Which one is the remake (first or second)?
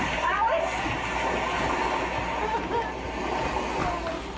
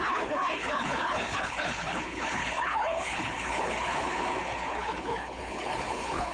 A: second